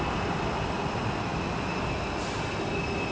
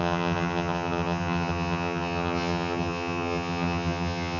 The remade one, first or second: second